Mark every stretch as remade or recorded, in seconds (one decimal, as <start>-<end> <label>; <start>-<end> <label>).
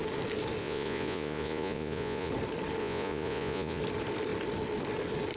0.0-0.6 recorded; 0.6-2.3 remade; 2.3-2.8 recorded; 2.8-3.8 remade; 3.8-5.4 recorded